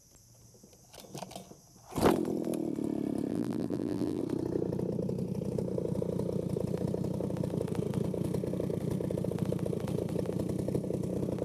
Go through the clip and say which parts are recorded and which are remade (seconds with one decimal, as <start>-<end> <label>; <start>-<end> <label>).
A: 0.0-3.3 recorded; 3.3-4.2 remade; 4.2-11.4 recorded